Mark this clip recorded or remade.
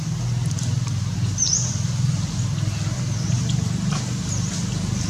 recorded